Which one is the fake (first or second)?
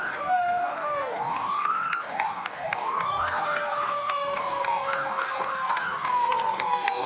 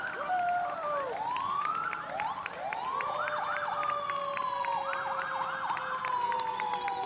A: first